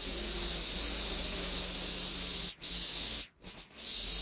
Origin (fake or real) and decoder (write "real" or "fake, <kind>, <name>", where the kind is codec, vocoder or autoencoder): real